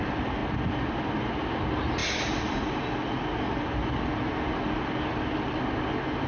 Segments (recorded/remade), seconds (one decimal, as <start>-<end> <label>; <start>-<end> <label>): 0.0-6.3 recorded